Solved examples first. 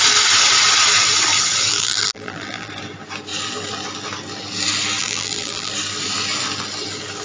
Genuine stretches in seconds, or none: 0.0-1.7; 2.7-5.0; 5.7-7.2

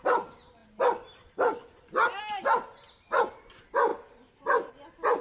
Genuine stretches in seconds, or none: 0.0-5.2

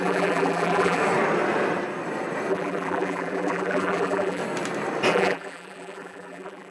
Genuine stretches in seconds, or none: 1.0-2.5; 4.4-5.1

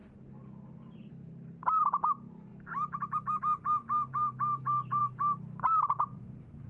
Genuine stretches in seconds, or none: 0.0-2.5; 3.4-3.8; 5.0-6.7

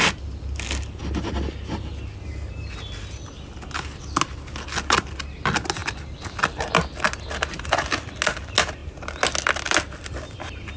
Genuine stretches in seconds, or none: 0.0-5.8; 6.7-10.8

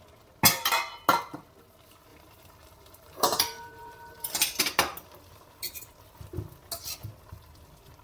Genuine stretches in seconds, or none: 0.0-2.1; 4.6-8.0

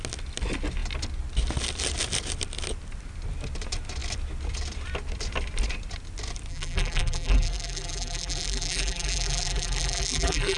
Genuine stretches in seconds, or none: 0.0-6.5